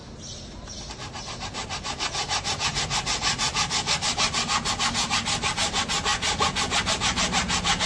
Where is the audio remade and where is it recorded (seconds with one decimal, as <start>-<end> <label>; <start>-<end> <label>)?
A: 0.0-7.9 remade